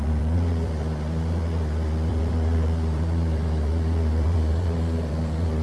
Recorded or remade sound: remade